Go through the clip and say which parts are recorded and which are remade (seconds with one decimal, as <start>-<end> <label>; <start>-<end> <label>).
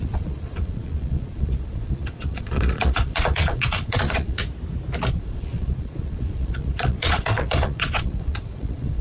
0.0-4.4 remade; 4.4-5.1 recorded; 5.1-9.0 remade